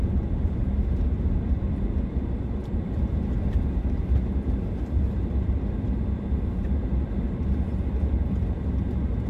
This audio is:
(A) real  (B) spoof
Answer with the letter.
B